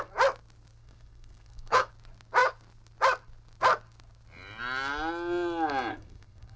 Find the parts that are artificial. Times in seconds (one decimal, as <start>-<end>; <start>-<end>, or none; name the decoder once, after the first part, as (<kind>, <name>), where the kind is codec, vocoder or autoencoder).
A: 0.8-1.9 (codec, SNAC); 5.9-6.6